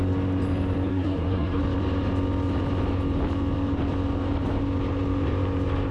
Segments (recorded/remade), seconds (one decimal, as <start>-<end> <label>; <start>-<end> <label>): 0.0-0.9 recorded; 0.9-1.6 remade; 1.6-5.9 recorded